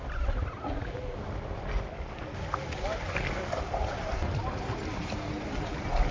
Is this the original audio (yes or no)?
yes